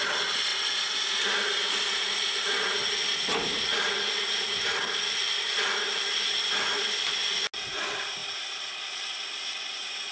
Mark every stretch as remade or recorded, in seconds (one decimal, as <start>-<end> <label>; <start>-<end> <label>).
0.0-10.1 recorded

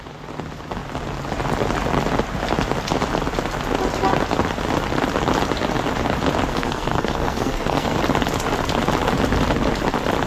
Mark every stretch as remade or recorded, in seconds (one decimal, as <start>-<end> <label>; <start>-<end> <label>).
0.0-6.5 recorded; 6.5-8.0 remade; 8.0-10.3 recorded

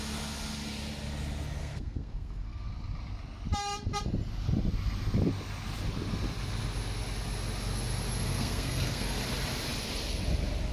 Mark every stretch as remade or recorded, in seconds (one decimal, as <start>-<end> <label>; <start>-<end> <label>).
0.0-1.6 recorded; 1.6-2.7 remade; 2.7-8.3 recorded; 8.3-9.2 remade; 9.2-10.7 recorded

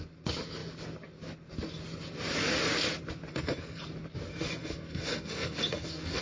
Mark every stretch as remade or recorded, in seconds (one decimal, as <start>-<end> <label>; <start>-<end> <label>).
0.0-3.3 recorded; 3.3-3.8 remade; 3.8-4.3 recorded; 4.3-6.2 remade

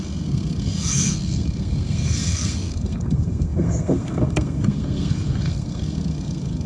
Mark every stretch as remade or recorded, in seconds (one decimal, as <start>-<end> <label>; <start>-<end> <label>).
0.0-6.7 remade

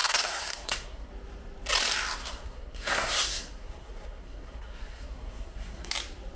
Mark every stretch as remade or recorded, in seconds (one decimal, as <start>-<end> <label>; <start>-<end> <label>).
0.0-1.1 remade; 1.1-2.2 recorded; 2.2-5.9 remade; 5.9-6.4 recorded